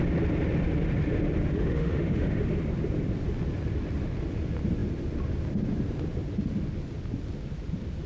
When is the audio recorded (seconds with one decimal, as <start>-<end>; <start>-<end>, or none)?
0.0-1.5; 2.4-8.1